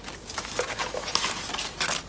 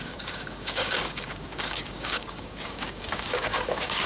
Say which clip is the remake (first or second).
second